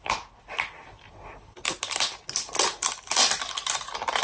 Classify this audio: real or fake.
real